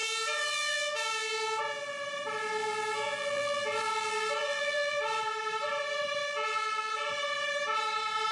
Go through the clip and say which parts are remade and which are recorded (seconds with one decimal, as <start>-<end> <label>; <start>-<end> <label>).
0.0-1.6 remade; 1.6-2.6 recorded; 2.6-5.2 remade; 5.2-6.2 recorded; 6.2-6.9 remade; 6.9-8.3 recorded